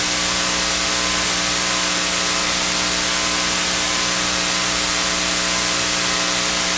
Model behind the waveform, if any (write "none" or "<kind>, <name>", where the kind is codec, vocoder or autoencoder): none